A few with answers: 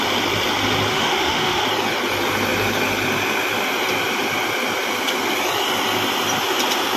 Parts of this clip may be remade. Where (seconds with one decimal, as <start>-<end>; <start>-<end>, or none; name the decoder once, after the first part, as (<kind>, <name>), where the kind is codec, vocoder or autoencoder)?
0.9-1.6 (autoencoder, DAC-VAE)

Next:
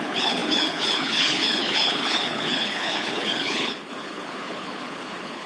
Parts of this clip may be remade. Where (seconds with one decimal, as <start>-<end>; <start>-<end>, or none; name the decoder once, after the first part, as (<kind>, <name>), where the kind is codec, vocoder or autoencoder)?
0.0-5.5 (codec, HILCodec)

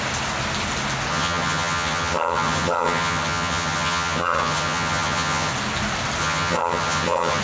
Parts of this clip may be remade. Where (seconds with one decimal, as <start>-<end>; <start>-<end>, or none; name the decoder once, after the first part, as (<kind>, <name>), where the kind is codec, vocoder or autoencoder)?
1.1-5.5 (vocoder, HiFi-GAN); 6.2-7.4